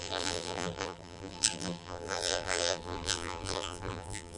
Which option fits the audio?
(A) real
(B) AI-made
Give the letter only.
B